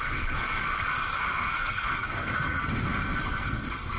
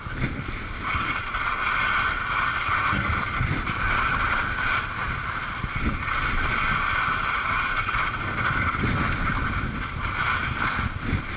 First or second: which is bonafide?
second